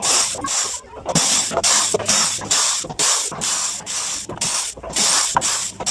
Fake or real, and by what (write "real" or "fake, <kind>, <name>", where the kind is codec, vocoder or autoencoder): fake, vocoder, BigVGAN v2